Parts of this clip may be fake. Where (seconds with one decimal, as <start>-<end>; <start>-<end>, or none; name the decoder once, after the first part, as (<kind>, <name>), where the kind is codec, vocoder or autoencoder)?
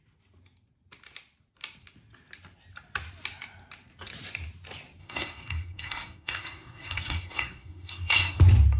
5.0-8.4 (codec, SNAC)